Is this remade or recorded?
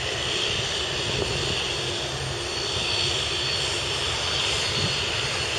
recorded